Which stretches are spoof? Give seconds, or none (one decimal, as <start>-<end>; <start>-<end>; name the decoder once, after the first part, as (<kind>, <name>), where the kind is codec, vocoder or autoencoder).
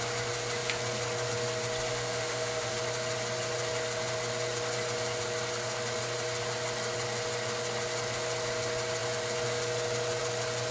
1.9-2.7 (autoencoder, DAC-VAE)